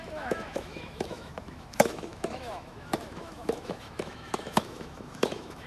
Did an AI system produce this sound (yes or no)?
yes